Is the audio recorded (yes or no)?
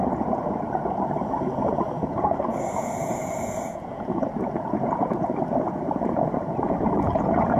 no